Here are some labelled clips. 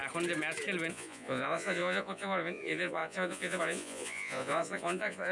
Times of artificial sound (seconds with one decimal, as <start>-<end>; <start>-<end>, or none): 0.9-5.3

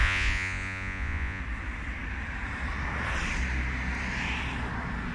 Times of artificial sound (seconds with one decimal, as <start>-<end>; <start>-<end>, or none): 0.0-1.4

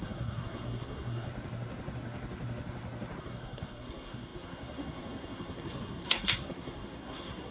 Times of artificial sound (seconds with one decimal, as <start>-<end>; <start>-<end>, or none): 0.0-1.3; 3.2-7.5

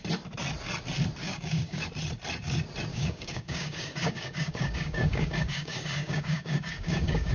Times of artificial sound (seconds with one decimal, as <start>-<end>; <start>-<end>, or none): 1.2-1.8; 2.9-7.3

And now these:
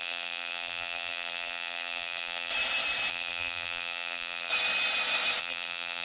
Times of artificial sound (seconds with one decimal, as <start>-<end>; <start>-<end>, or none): 0.0-2.5; 3.1-4.5; 5.4-6.0

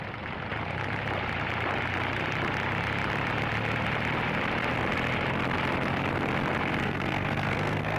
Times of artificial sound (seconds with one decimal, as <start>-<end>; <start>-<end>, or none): 6.8-8.0